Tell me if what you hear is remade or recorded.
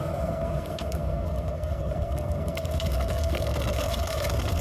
remade